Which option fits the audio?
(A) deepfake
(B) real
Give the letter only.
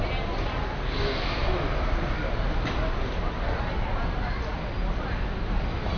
B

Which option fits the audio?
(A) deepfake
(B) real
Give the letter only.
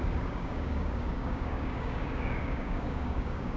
A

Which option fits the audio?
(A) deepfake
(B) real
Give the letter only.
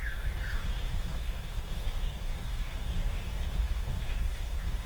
A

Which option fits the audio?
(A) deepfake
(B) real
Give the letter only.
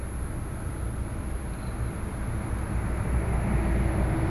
B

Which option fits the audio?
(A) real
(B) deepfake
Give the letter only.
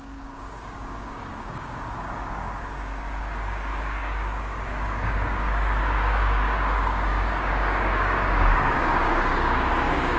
B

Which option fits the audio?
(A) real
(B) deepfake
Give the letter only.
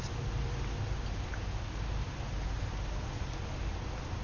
A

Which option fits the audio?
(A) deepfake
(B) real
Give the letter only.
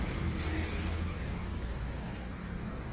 A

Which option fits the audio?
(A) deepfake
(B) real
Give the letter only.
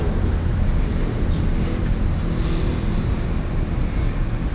B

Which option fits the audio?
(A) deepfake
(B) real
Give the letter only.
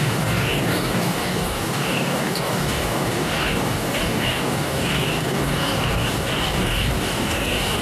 A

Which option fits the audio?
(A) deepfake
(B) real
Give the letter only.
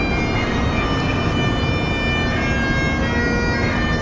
B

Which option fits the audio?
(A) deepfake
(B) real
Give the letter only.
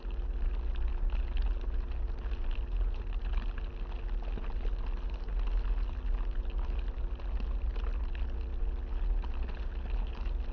B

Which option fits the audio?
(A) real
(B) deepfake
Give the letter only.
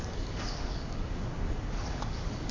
B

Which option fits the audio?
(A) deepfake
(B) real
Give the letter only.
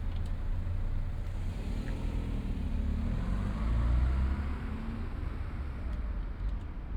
B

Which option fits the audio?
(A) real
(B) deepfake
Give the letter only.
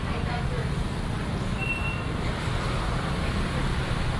A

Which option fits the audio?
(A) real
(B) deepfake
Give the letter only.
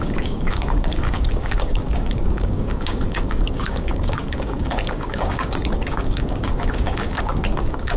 B